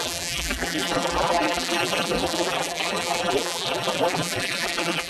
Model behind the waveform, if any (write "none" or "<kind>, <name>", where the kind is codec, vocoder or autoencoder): vocoder, BigVGAN v2